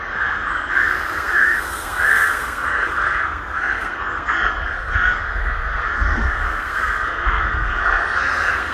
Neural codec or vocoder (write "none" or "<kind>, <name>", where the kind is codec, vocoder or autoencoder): codec, SNAC